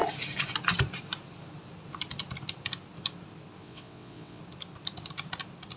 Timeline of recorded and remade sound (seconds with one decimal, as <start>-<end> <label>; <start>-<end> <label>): 0.0-3.6 recorded; 3.6-4.4 remade; 4.4-5.8 recorded